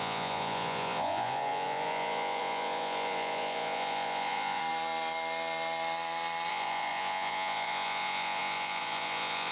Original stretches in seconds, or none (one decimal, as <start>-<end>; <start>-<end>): 4.6-6.5